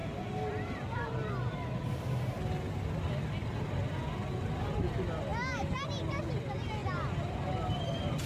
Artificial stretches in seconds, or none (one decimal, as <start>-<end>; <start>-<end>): 0.0-2.3